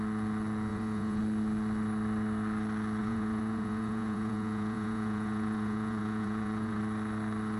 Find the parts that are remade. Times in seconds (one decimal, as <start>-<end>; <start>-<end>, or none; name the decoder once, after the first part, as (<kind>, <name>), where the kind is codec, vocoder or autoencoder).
0.7-1.2 (vocoder, Vocos); 3.0-6.8